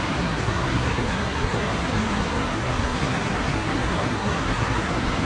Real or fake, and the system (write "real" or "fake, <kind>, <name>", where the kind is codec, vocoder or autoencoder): fake, codec, SNAC